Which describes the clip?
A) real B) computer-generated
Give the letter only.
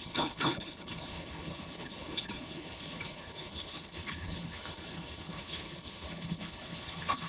B